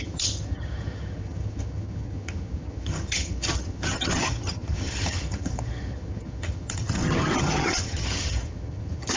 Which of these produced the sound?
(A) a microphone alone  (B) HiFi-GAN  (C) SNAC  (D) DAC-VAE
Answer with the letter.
B